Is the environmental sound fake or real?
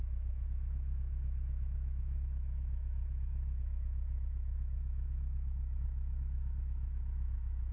fake